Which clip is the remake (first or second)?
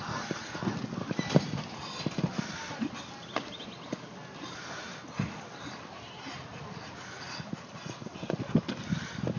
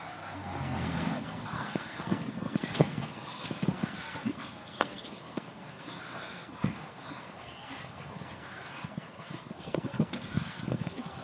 second